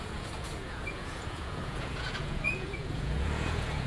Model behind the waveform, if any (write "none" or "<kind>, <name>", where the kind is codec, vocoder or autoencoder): vocoder, Vocos